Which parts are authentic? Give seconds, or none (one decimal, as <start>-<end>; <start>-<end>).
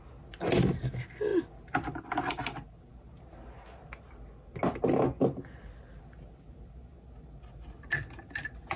0.0-8.8